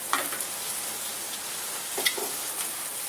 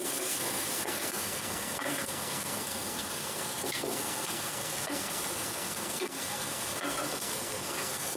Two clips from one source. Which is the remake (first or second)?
second